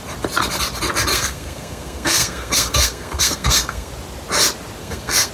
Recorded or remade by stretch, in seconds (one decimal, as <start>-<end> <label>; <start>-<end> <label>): 0.0-1.1 recorded; 1.1-3.9 remade; 3.9-4.8 recorded; 4.8-5.3 remade